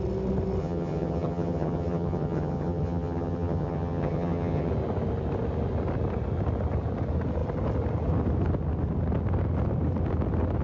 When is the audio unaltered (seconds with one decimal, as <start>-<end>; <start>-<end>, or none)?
0.0-0.6; 4.7-10.6